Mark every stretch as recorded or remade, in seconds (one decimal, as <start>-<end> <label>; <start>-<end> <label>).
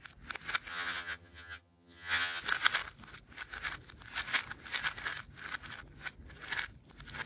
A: 0.0-0.7 recorded; 0.7-2.4 remade; 2.4-7.3 recorded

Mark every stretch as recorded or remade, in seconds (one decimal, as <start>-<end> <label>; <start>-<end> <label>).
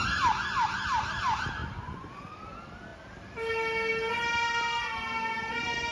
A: 0.0-1.6 recorded; 1.6-2.3 remade; 2.3-5.9 recorded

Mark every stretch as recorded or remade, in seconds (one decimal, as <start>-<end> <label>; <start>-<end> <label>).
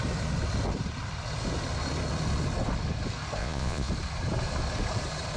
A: 0.0-3.4 recorded; 3.4-3.9 remade; 3.9-5.4 recorded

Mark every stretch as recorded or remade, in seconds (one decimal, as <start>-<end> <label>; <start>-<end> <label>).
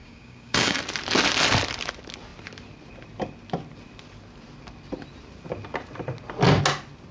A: 0.0-0.8 remade; 0.8-7.1 recorded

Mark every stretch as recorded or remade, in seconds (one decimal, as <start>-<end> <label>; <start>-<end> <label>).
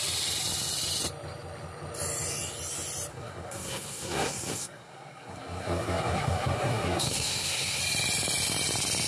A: 0.0-3.1 recorded; 3.1-7.8 remade; 7.8-9.1 recorded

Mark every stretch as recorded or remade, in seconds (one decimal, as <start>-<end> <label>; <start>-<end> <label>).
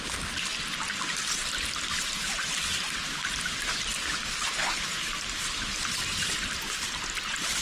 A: 0.0-7.6 recorded